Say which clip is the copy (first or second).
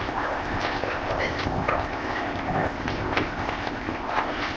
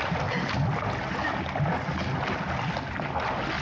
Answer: first